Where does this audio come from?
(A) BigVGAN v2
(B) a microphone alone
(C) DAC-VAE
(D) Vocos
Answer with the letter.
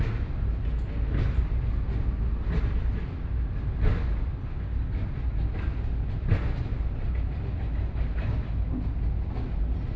B